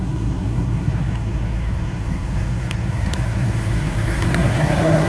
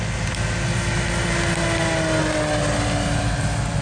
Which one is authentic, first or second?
second